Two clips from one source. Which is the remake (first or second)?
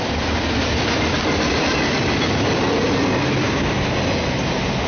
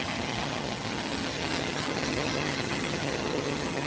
second